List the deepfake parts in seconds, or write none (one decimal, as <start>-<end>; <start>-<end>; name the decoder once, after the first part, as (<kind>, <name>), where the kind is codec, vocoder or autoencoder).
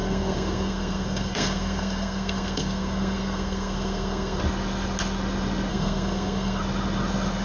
0.0-4.4 (codec, SNAC); 5.7-6.6